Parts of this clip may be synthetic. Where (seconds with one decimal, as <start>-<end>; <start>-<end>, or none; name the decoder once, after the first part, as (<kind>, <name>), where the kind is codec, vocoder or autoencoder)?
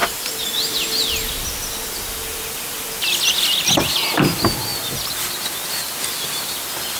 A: none